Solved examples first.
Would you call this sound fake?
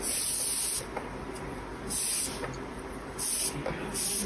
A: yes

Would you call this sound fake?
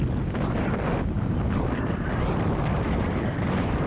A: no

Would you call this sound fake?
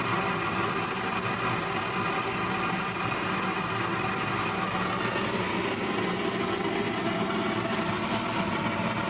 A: no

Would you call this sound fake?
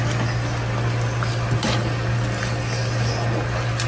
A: no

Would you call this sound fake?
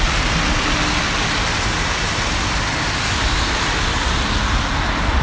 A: no